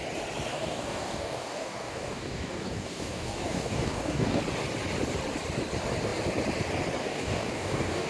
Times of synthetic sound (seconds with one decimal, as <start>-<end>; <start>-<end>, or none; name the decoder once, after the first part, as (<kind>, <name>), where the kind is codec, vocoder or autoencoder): 0.5-4.4 (codec, DAC); 7.0-8.1